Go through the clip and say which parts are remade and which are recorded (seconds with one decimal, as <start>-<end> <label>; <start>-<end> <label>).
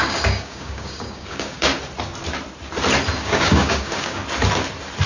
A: 0.0-1.7 remade; 1.7-3.2 recorded; 3.2-4.2 remade; 4.2-5.1 recorded